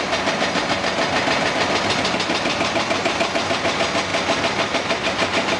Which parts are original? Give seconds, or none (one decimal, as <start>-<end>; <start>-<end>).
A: 0.0-5.6